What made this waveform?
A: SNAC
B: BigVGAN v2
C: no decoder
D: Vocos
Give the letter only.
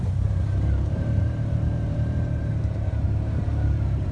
B